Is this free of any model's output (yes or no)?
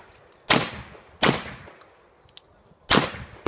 yes